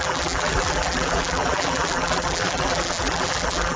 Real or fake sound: fake